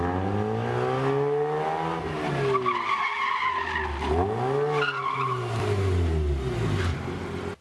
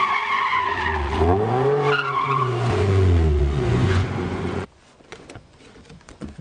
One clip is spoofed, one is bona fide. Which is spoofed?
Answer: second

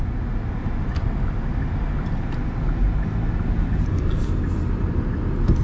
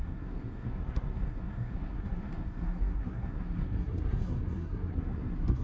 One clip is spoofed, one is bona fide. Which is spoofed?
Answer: second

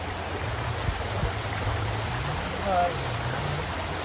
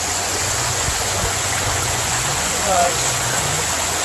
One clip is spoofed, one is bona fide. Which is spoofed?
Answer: second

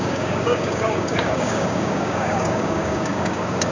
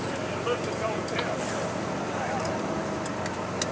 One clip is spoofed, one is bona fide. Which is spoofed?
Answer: first